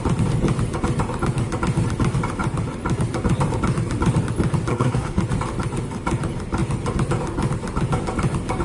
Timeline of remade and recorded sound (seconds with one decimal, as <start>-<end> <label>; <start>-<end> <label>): 0.0-4.7 recorded; 4.7-5.2 remade; 5.2-8.6 recorded